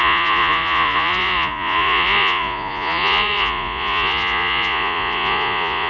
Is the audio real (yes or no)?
no